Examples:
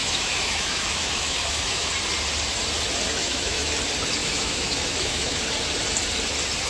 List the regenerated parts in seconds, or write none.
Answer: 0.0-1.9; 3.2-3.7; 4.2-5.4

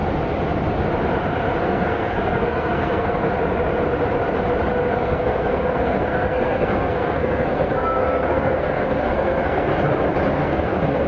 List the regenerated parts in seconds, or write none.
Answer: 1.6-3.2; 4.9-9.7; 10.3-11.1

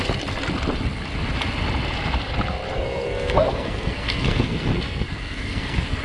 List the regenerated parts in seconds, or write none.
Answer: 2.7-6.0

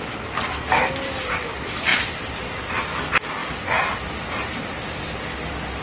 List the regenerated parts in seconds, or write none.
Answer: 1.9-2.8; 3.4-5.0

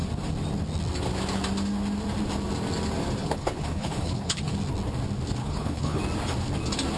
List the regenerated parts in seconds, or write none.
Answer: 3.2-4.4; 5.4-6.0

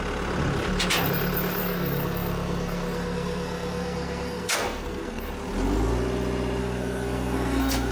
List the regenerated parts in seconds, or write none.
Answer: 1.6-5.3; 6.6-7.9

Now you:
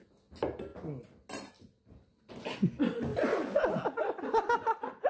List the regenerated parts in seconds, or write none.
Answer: none